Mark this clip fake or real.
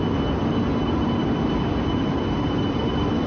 real